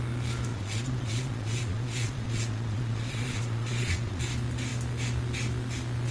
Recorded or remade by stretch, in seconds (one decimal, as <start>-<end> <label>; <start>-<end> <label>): 0.0-0.5 recorded; 0.5-4.2 remade; 4.2-6.1 recorded